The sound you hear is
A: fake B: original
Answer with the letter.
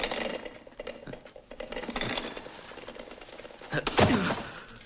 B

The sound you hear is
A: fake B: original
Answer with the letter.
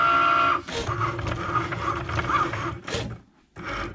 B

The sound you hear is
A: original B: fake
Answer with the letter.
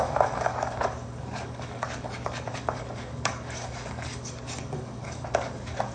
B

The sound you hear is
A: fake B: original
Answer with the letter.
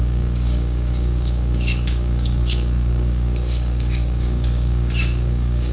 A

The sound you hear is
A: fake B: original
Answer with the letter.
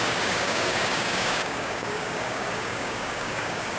A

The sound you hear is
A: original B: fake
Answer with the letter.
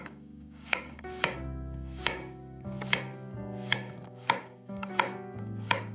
B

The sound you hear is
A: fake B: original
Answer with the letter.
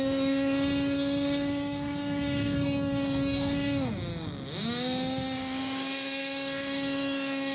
A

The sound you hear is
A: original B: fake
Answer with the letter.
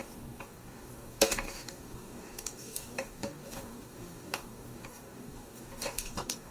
B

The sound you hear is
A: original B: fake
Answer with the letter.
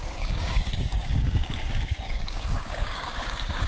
B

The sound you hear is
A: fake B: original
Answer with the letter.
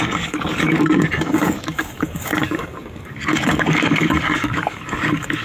A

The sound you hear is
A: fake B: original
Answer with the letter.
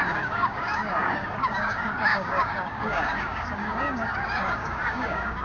A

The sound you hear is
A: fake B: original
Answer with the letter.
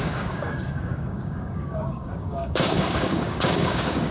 A